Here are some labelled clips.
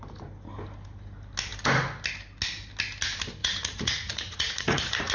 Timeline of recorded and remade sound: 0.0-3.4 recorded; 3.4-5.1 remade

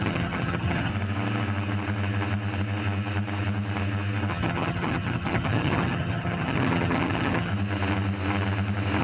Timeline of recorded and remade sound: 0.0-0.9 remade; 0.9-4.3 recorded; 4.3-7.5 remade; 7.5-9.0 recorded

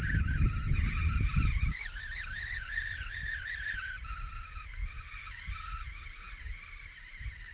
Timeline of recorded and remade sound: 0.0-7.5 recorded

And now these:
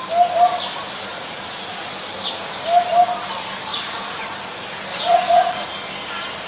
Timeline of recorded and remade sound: 0.0-1.1 recorded; 1.1-1.9 remade; 1.9-3.7 recorded; 3.7-4.2 remade; 4.2-4.9 recorded; 4.9-5.7 remade; 5.7-6.5 recorded

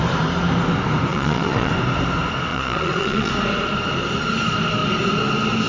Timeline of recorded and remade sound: 0.0-1.1 recorded; 1.1-1.7 remade; 1.7-2.5 recorded; 2.5-3.3 remade; 3.3-5.7 recorded

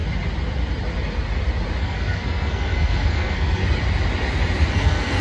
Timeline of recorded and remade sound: 0.0-1.8 recorded; 1.8-3.6 remade; 3.6-4.7 recorded; 4.7-5.2 remade

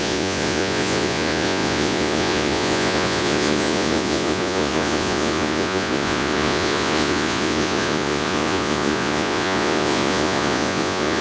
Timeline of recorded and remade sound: 0.0-11.2 remade